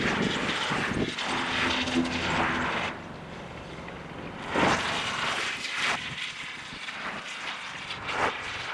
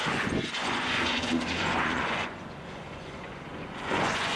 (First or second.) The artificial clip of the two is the second